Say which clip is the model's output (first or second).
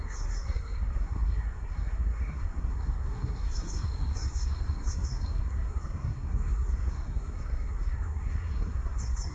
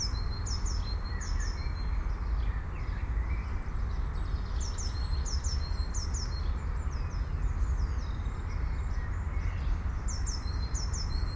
first